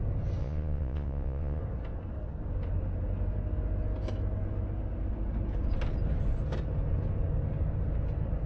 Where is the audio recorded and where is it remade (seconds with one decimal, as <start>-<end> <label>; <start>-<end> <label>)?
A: 0.0-0.4 recorded; 0.4-1.6 remade; 1.6-8.5 recorded